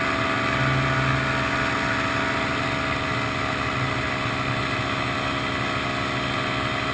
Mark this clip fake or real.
real